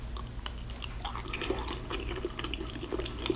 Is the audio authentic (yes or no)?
yes